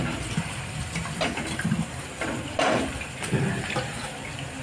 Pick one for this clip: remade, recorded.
remade